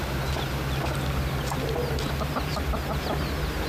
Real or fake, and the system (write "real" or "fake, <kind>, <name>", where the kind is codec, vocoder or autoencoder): real